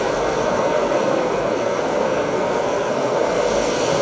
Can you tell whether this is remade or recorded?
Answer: remade